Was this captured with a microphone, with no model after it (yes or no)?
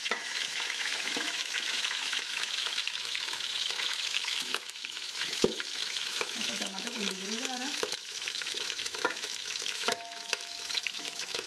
no